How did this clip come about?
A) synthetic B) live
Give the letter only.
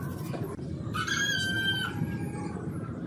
B